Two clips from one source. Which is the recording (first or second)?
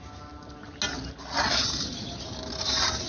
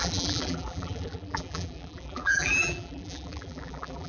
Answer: first